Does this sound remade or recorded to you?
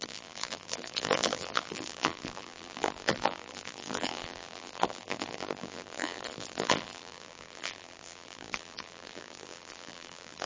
remade